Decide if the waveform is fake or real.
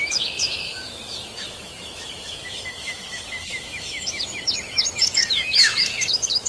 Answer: fake